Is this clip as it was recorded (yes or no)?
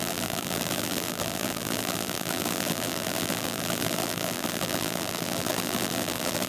no